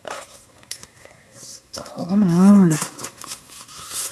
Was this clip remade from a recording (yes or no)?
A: yes